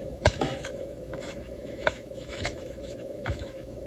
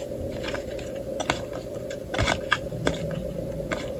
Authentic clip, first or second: second